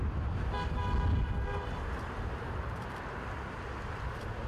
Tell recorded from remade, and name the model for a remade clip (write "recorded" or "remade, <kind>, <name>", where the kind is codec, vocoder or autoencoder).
recorded